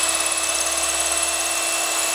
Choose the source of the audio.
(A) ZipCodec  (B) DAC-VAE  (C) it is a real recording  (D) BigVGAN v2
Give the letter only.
C